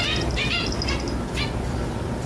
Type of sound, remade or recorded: recorded